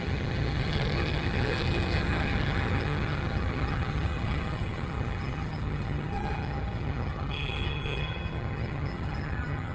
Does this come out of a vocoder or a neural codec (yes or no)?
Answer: yes